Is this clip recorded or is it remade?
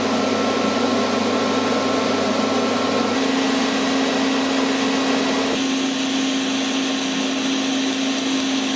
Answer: recorded